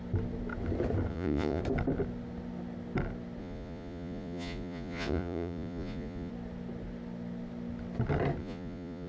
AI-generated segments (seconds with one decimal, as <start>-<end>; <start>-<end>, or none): 1.1-1.6; 3.4-6.3; 8.4-9.1